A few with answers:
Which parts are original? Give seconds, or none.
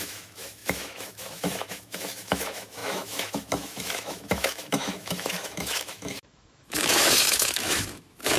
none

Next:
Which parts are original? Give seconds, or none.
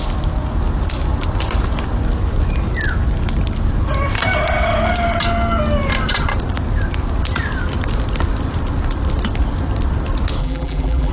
0.0-10.4